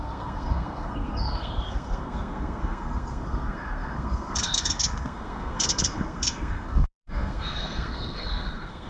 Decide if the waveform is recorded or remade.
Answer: remade